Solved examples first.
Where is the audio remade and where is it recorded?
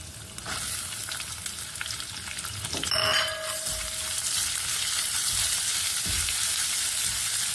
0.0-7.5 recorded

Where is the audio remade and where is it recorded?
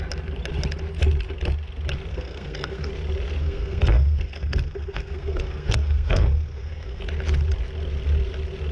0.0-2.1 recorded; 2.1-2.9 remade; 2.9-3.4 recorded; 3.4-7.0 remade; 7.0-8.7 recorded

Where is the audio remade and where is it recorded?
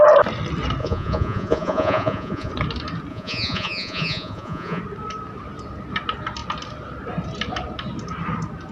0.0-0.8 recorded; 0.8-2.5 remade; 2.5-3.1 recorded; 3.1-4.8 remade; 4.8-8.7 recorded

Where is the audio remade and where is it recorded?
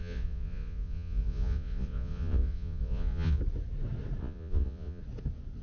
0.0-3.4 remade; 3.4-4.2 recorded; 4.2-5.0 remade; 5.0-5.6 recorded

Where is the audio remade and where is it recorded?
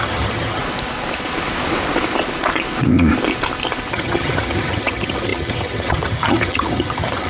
0.0-0.6 remade; 0.6-3.9 recorded; 3.9-7.3 remade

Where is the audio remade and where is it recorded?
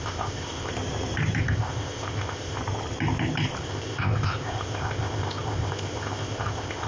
0.0-0.7 remade; 0.7-1.4 recorded; 1.4-2.6 remade; 2.6-3.6 recorded; 3.6-6.9 remade